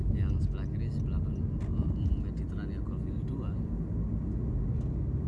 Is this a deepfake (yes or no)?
no